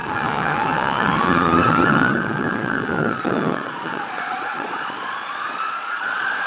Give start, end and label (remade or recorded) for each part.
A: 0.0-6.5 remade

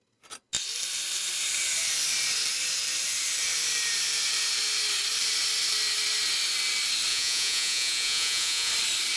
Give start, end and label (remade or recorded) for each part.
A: 0.0-7.1 recorded; 7.1-8.7 remade; 8.7-9.2 recorded

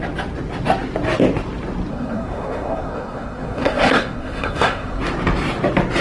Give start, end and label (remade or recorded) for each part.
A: 0.0-1.9 recorded; 1.9-5.0 remade; 5.0-6.0 recorded

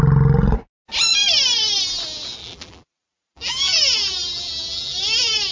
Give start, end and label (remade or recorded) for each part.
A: 0.0-2.4 recorded; 2.4-5.5 remade